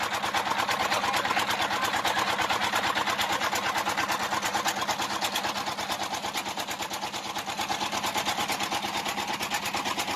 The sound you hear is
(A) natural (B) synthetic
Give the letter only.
A